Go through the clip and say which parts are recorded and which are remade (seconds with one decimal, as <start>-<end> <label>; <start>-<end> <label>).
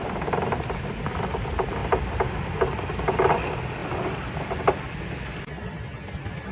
0.0-6.5 recorded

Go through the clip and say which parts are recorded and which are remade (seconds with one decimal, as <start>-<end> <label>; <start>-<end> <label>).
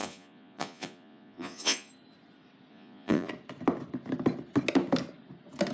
0.0-1.9 remade; 1.9-2.7 recorded; 2.7-3.3 remade; 3.3-5.7 recorded